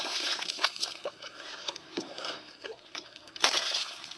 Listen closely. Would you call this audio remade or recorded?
remade